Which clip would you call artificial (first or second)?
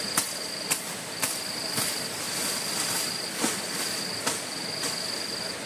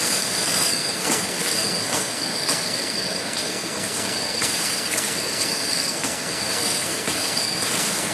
second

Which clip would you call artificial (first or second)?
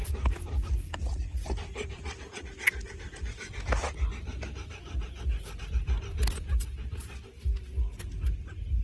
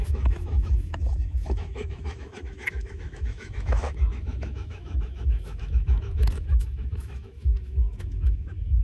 second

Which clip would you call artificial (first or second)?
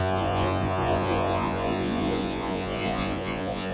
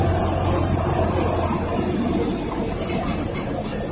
first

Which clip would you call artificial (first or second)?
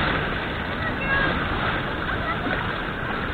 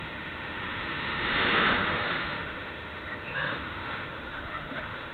second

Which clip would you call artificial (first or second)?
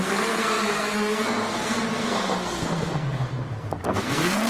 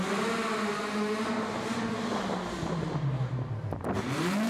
first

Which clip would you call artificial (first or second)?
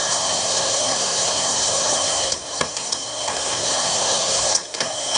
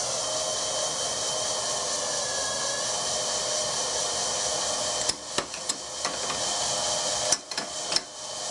first